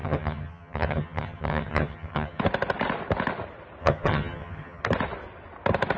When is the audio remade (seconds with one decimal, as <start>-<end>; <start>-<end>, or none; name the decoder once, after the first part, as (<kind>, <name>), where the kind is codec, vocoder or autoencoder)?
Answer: 0.0-2.4 (vocoder, HiFi-GAN); 3.8-4.8